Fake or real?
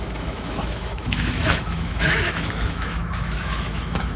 fake